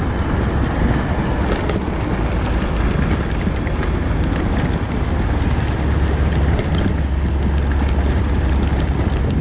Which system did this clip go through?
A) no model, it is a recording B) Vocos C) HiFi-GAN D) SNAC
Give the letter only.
A